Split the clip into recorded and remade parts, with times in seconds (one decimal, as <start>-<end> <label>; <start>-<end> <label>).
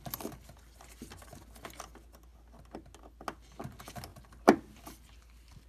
0.0-5.7 recorded